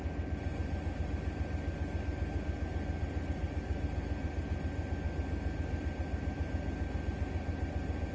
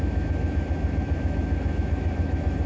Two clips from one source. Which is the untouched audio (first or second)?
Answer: first